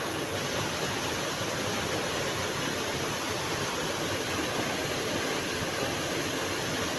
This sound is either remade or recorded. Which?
recorded